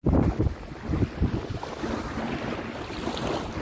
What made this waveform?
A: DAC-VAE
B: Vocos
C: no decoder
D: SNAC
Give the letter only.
C